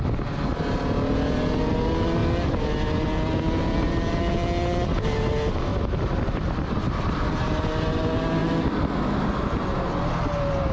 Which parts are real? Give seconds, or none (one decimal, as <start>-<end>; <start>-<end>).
0.0-10.7

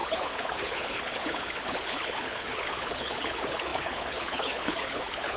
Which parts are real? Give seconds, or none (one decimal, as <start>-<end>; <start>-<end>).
none

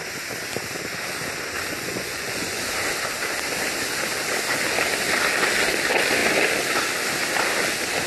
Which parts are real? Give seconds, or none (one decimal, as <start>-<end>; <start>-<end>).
0.0-1.7; 2.6-8.1